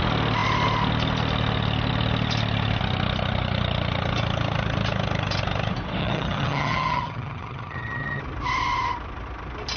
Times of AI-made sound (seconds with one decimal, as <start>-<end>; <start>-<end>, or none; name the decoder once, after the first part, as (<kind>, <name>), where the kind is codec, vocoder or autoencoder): 6.0-8.2 (vocoder, HiFi-GAN)